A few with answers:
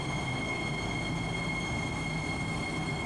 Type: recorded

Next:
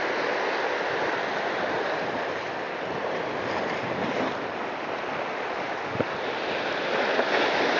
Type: recorded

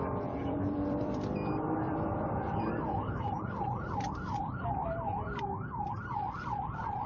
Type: remade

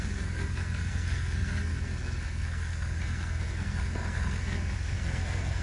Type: remade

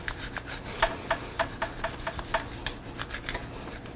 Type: recorded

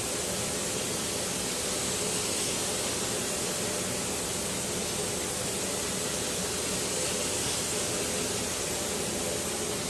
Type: recorded